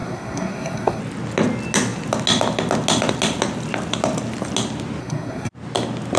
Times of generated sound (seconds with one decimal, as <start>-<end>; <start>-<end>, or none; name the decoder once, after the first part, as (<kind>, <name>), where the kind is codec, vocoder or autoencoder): 0.0-1.0 (codec, SNAC); 5.0-5.5